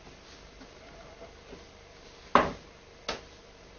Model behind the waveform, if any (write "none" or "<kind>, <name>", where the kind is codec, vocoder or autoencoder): none